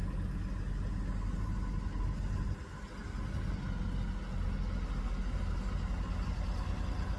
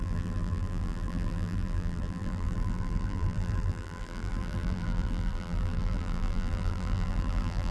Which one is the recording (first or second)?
first